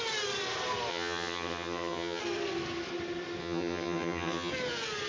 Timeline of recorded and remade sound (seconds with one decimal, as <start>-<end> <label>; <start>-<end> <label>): 0.0-0.9 recorded; 0.9-2.2 remade; 2.2-3.4 recorded; 3.4-4.5 remade; 4.5-5.1 recorded